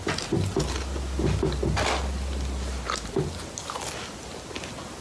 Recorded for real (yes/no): yes